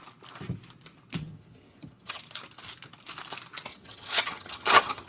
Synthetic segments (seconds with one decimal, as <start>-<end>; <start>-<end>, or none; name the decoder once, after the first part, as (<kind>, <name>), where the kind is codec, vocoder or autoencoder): 1.2-2.2 (vocoder, HiFi-GAN); 3.7-5.1